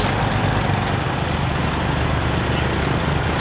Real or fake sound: real